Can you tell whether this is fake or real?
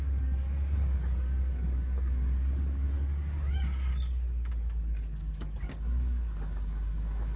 fake